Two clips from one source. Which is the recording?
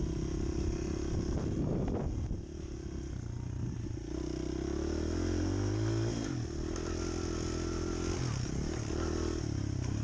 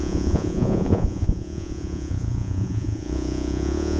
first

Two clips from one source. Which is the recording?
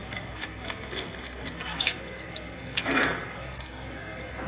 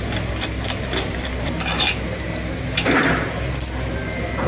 second